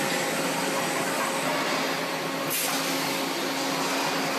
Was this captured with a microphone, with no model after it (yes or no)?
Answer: yes